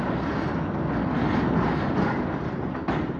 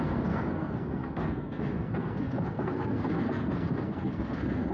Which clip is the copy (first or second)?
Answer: second